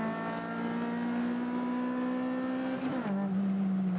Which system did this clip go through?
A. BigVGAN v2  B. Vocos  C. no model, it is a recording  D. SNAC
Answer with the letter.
C